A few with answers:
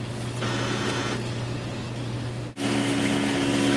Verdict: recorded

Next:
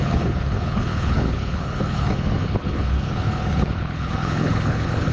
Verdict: remade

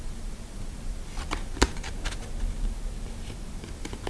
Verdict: recorded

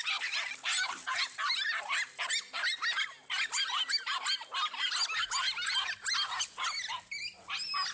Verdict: recorded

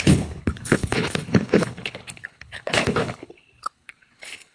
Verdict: remade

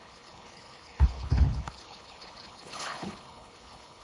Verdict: remade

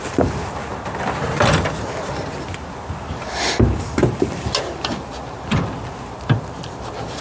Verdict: recorded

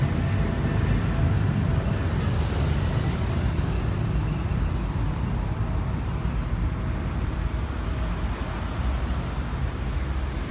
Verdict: recorded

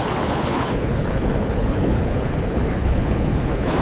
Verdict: remade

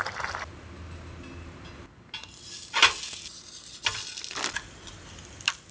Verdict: recorded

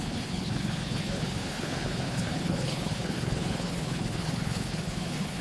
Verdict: remade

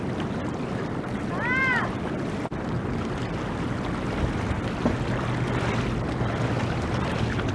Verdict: recorded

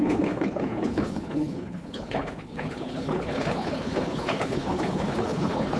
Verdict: remade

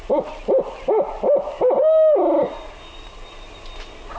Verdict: recorded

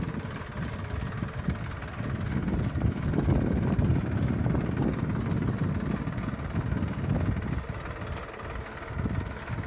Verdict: recorded